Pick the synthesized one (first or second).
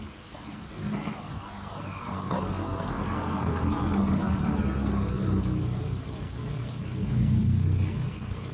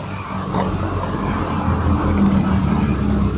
first